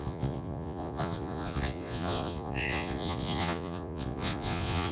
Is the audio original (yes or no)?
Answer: no